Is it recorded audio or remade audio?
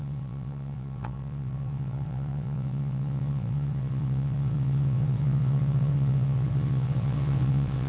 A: remade